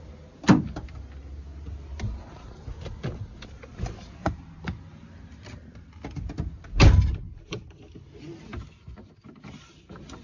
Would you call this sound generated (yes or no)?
no